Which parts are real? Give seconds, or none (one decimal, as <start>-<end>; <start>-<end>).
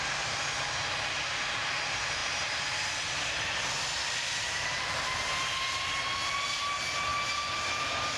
0.0-8.2